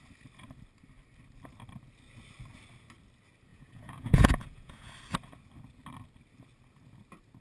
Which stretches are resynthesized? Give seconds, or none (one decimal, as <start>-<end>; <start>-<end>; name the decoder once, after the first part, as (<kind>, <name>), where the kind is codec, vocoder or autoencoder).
3.5-4.9 (vocoder, Vocos)

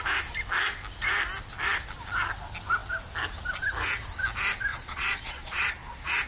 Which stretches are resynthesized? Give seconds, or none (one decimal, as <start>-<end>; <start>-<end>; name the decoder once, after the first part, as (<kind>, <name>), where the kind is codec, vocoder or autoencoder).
4.7-6.3 (vocoder, Vocos)

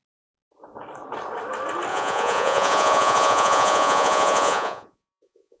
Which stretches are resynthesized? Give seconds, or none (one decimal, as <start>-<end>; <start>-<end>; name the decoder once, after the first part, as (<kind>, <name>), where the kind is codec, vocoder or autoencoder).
1.9-5.6 (vocoder, Vocos)

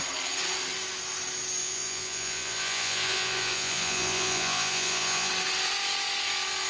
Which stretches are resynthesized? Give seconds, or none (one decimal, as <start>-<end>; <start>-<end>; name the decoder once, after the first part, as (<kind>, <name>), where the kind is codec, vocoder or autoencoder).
1.6-5.3 (vocoder, Vocos)